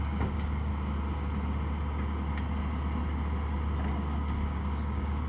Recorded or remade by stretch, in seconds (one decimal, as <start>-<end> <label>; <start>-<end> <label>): 0.0-0.7 remade; 0.7-3.9 recorded; 3.9-5.3 remade